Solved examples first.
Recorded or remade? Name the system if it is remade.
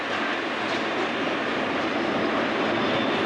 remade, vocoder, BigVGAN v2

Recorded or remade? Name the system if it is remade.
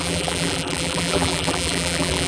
remade, vocoder, BigVGAN v2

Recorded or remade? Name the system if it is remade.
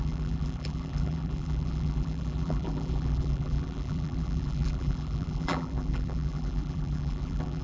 remade, vocoder, BigVGAN v2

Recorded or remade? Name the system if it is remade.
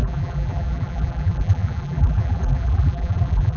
remade, vocoder, BigVGAN v2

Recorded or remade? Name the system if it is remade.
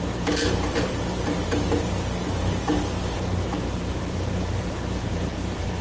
remade, vocoder, BigVGAN v2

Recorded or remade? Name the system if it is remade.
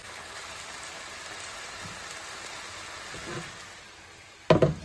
recorded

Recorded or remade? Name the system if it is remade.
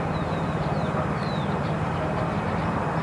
remade, vocoder, BigVGAN v2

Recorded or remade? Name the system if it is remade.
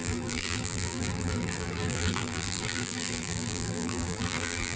remade, vocoder, BigVGAN v2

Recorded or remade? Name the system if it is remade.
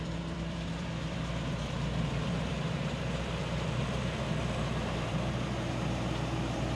remade, vocoder, BigVGAN v2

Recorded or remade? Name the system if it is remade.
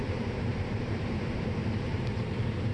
remade, vocoder, BigVGAN v2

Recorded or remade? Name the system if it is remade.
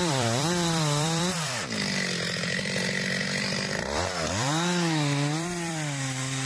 remade, vocoder, BigVGAN v2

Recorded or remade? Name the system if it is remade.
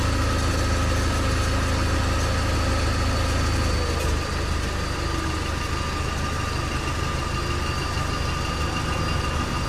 recorded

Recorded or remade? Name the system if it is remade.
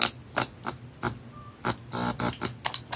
recorded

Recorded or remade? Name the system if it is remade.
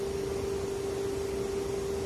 recorded